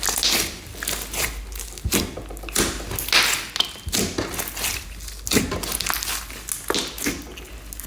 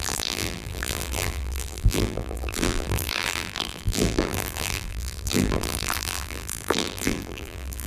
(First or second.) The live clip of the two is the first